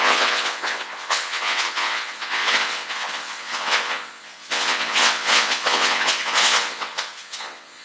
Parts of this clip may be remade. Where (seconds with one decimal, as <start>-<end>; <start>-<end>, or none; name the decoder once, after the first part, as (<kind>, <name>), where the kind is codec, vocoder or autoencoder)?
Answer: 0.0-7.8 (vocoder, WaveNeXt)

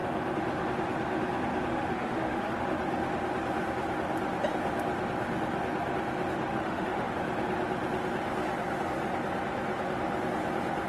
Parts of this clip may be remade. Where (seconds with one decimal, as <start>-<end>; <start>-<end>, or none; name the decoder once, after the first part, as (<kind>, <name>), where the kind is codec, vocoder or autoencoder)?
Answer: 1.7-2.5 (autoencoder, DAC-VAE); 6.5-7.1

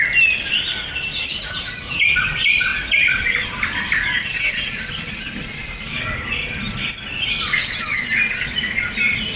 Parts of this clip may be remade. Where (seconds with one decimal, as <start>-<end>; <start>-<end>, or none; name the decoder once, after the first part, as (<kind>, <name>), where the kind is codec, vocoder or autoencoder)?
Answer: 2.7-5.1 (vocoder, BigVGAN v2)

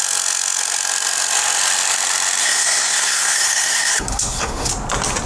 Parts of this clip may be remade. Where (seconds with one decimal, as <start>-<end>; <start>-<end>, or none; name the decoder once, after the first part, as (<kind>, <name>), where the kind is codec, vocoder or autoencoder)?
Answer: 2.4-4.7 (codec, SNAC)

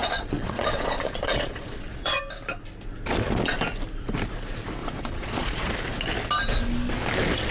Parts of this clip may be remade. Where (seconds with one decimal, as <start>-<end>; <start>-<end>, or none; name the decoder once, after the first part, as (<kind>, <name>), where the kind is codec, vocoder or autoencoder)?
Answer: 0.0-2.2 (vocoder, Vocos); 4.8-5.7